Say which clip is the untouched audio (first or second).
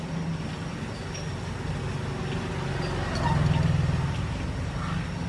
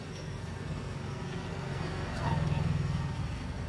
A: first